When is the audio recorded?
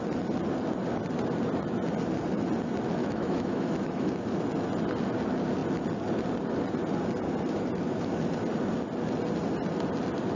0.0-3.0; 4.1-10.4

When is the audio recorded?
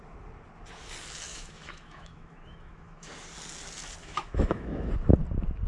0.0-1.3; 3.1-4.0; 4.9-5.7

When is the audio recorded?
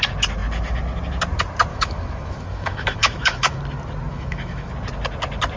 0.0-1.7; 3.6-4.1; 4.7-5.6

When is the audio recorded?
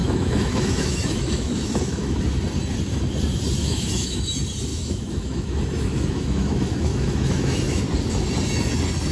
2.2-3.6; 4.3-4.7; 7.8-9.1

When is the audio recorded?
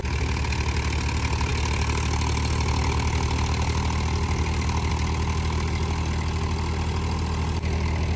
0.0-8.2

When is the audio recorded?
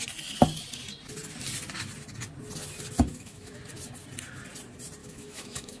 0.0-3.1; 3.6-5.0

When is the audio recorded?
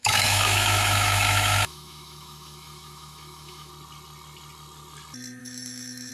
3.7-5.4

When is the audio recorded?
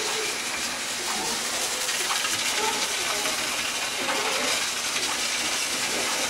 0.0-6.3